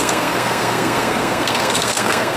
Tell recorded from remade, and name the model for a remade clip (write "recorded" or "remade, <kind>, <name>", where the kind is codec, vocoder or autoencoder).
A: remade, codec, SNAC